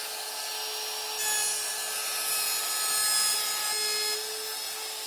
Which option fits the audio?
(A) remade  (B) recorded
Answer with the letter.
B